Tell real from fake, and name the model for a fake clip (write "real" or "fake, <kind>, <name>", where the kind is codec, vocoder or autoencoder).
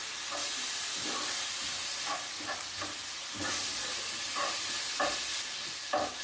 real